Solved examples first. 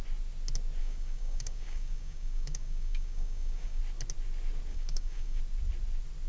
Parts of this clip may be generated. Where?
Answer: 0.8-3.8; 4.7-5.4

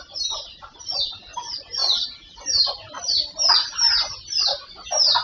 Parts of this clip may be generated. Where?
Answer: none

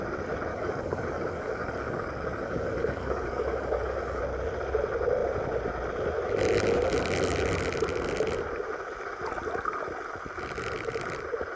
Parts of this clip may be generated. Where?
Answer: 0.5-4.2

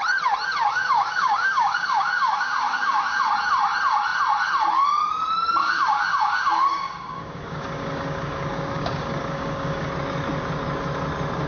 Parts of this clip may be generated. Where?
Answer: 0.7-3.2; 5.6-9.9

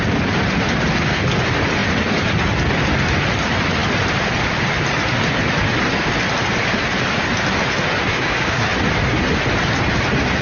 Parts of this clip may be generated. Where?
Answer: 8.1-8.7